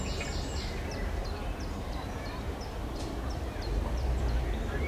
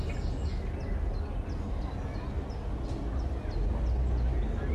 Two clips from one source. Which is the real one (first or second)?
second